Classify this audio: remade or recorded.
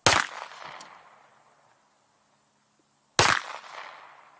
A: recorded